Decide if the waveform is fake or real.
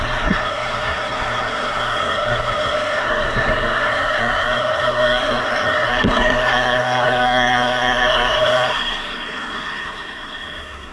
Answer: fake